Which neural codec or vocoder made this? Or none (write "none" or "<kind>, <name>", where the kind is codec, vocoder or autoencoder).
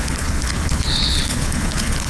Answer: codec, HILCodec